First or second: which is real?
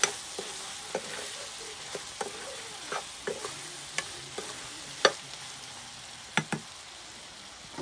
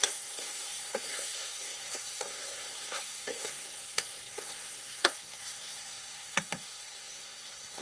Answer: first